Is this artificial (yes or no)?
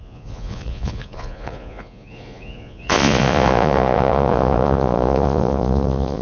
yes